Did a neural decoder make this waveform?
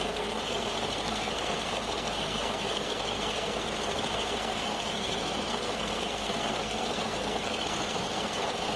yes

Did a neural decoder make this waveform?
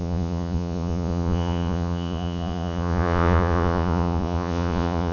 yes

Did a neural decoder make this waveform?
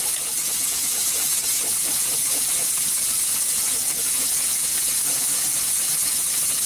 yes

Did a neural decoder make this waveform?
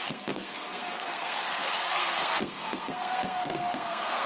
yes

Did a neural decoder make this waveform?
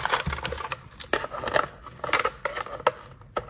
no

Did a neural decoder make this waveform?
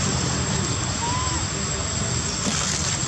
no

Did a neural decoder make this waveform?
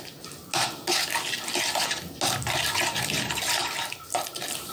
no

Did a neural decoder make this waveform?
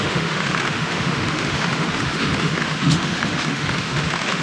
yes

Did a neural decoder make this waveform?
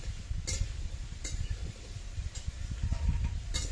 no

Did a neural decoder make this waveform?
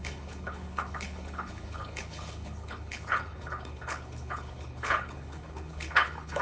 yes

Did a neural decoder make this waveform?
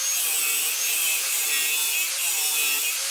no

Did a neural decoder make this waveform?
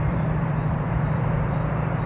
yes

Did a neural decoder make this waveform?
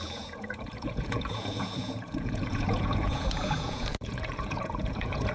yes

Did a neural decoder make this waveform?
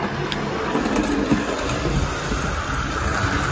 no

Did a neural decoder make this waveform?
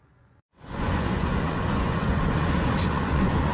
yes